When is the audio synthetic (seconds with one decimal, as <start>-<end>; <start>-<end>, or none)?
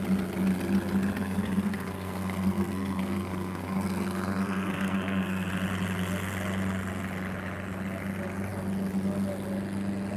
1.2-5.5